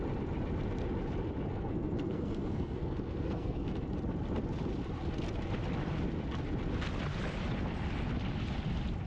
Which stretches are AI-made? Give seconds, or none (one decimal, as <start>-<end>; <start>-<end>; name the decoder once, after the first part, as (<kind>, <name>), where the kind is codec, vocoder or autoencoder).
1.5-3.8 (codec, SNAC)